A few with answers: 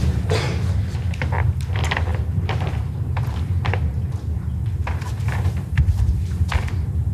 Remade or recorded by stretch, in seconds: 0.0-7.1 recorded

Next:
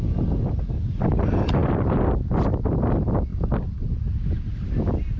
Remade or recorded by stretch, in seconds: 0.0-5.2 recorded

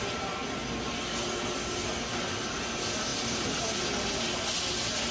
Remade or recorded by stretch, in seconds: 0.0-5.1 recorded

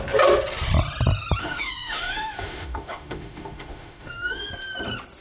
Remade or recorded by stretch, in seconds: 0.0-1.4 recorded; 1.4-4.5 remade; 4.5-5.2 recorded

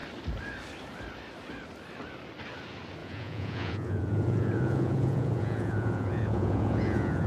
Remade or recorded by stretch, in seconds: 0.0-3.0 recorded; 3.0-7.3 remade

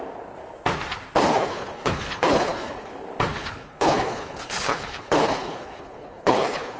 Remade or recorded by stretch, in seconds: 0.0-1.3 recorded; 1.3-2.9 remade; 2.9-3.3 recorded; 3.3-6.8 remade

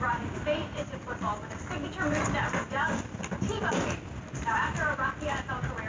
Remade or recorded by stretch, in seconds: 0.0-0.6 recorded; 0.6-1.2 remade; 1.2-5.9 recorded

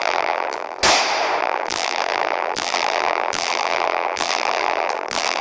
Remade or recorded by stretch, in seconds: 0.0-0.8 remade; 0.8-1.4 recorded; 1.4-5.4 remade